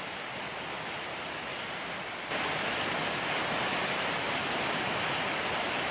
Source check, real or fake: real